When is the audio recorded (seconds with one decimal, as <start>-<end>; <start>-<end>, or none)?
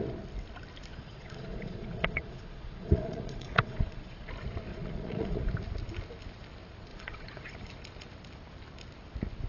0.0-0.9; 4.3-4.7; 5.5-6.9; 7.5-9.5